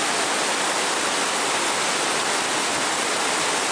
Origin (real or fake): real